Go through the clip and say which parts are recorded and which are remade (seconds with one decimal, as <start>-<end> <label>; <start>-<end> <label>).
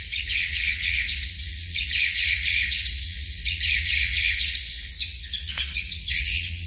0.0-6.7 remade